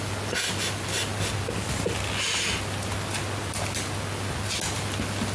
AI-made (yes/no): no